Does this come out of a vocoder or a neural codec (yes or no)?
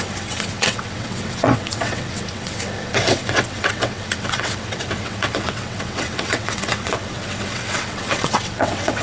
yes